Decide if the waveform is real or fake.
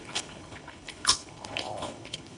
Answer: fake